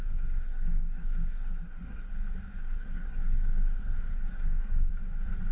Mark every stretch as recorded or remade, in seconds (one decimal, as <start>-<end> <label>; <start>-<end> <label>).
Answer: 0.0-2.1 remade; 2.1-2.6 recorded; 2.6-3.4 remade; 3.4-3.8 recorded; 3.8-4.9 remade; 4.9-5.5 recorded